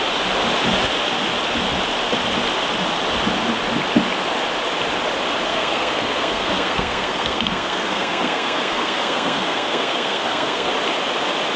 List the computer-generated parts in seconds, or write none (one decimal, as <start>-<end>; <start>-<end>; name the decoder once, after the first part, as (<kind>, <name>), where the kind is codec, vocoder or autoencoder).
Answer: 5.5-10.7 (codec, SNAC)